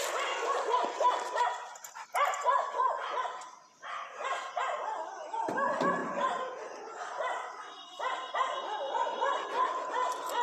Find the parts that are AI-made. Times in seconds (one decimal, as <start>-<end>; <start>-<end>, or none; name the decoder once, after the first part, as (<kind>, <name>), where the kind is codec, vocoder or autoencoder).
none